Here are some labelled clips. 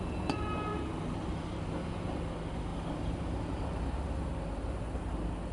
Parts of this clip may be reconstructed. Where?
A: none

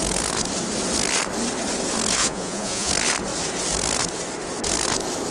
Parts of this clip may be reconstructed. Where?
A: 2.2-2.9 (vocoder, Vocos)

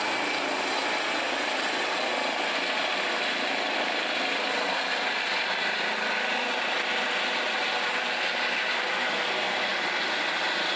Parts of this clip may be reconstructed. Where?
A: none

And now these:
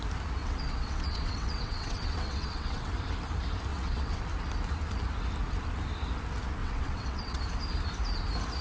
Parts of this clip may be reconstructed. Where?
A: 0.4-2.9 (vocoder, WaveNeXt); 3.7-4.2; 6.6-7.4

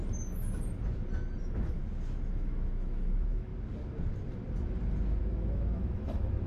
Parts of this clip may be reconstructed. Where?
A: 1.4-1.8 (autoencoder, DAC-VAE); 2.3-3.5; 5.2-6.5

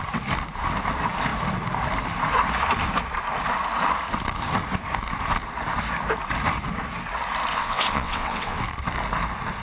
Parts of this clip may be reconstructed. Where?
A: 7.5-8.6 (vocoder, WaveNeXt)